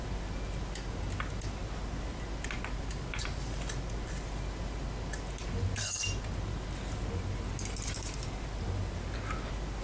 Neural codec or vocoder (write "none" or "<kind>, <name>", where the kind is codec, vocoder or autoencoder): none